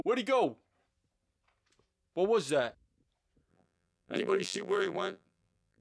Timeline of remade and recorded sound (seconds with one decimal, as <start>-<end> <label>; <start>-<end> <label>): 0.0-3.5 recorded; 3.5-5.8 remade